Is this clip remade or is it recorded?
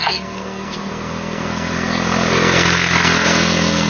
remade